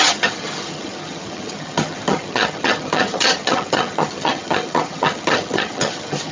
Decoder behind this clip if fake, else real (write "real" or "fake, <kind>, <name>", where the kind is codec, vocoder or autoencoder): fake, vocoder, HiFi-GAN